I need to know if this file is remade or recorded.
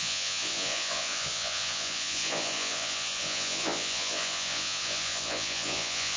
remade